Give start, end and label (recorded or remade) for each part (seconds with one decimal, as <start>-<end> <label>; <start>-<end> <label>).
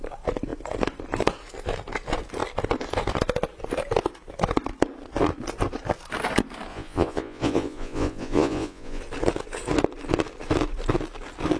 0.0-6.7 recorded; 6.7-9.0 remade; 9.0-11.6 recorded